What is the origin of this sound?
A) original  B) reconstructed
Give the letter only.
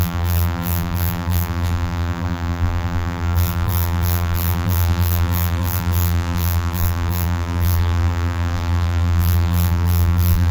B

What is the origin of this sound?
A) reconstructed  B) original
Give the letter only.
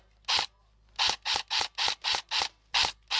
B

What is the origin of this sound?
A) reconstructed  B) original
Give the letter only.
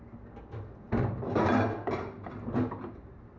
B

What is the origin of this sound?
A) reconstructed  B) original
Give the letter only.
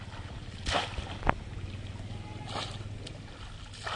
B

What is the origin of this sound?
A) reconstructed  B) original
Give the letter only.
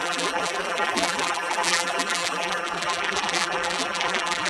A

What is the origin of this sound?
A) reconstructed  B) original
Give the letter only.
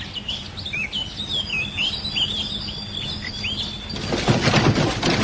B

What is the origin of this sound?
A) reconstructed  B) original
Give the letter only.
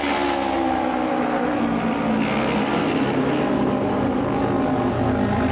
B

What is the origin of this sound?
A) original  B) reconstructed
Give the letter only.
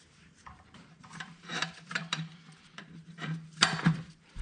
B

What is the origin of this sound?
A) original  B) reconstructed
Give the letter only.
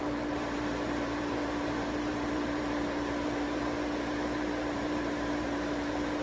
B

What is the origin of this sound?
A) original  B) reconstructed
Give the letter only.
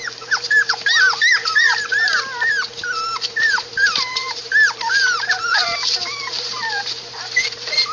B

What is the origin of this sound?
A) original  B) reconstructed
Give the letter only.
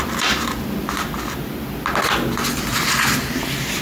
A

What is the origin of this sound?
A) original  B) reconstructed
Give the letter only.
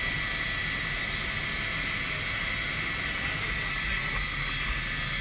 A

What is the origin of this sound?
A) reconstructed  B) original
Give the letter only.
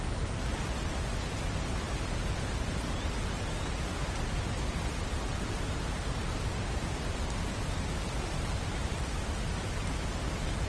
B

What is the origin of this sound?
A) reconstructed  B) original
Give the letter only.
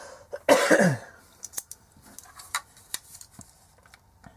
B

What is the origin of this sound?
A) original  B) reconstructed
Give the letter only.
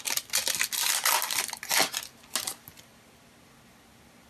A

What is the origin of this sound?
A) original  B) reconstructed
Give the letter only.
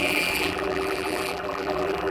B